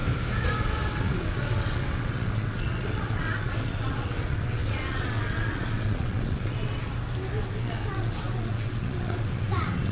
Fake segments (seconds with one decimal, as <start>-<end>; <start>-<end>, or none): 0.6-6.9; 7.4-9.9